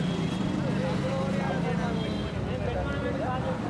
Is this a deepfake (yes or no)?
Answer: no